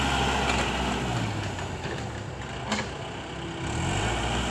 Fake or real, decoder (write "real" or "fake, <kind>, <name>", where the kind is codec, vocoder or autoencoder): real